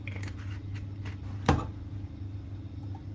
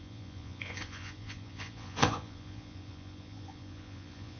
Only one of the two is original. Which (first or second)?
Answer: first